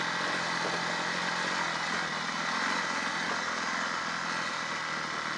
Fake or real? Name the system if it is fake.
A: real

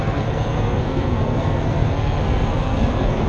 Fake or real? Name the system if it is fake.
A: fake, codec, SNAC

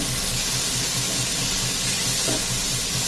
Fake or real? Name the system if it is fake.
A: real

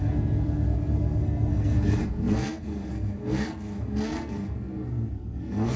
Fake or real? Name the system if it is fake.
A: fake, codec, SNAC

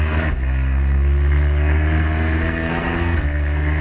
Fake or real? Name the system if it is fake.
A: fake, codec, SNAC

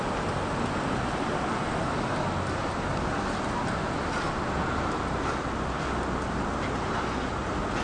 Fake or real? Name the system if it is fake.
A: real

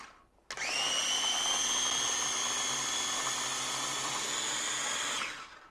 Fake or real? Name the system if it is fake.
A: real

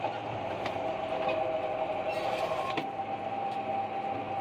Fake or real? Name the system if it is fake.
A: real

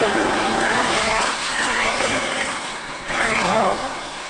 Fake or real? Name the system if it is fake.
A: fake, codec, SNAC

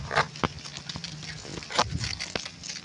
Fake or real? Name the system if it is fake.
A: real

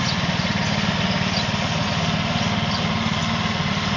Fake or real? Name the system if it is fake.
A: real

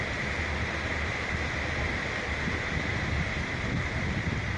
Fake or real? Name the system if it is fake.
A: real